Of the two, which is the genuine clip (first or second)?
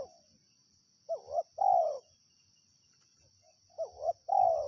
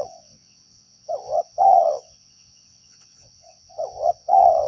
first